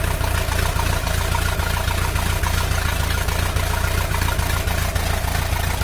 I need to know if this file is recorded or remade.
recorded